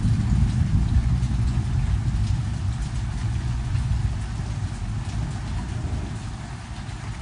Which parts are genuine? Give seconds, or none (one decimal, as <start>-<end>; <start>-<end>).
0.0-1.0; 1.6-3.2; 3.9-7.2